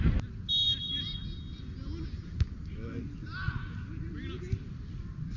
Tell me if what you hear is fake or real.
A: real